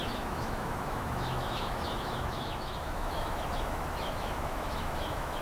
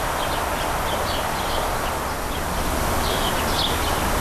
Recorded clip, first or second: second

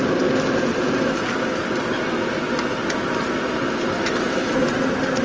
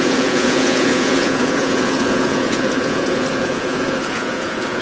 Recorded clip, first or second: first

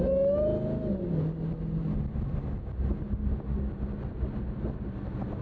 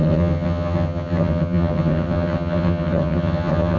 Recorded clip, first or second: first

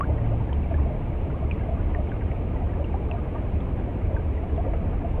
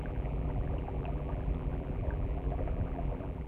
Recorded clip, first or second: first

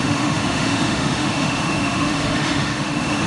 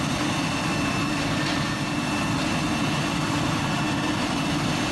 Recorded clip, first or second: second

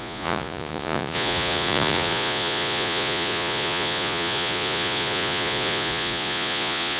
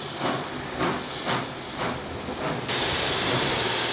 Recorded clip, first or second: second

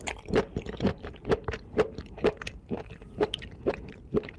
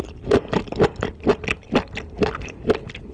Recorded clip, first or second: second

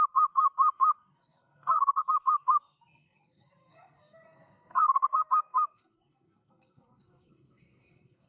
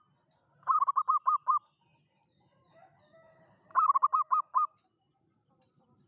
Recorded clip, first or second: second